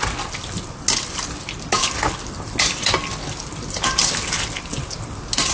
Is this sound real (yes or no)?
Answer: yes